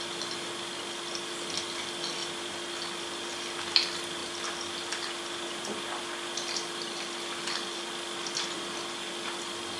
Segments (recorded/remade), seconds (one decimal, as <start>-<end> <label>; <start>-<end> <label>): 0.0-9.8 recorded